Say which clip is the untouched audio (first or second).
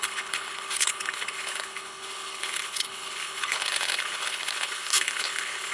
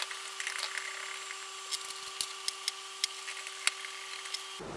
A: second